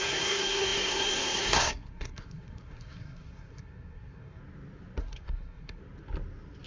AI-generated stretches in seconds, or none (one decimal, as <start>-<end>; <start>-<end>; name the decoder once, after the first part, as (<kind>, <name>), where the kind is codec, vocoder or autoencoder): 0.0-4.4 (codec, SNAC); 5.0-5.8